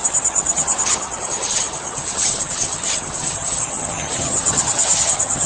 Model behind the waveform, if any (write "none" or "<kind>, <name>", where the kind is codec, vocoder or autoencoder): vocoder, HiFi-GAN